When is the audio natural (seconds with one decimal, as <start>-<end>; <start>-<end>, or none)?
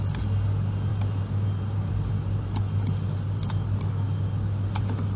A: 0.0-5.2